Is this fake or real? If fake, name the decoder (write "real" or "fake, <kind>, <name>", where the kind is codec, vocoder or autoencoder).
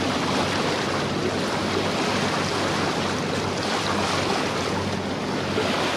real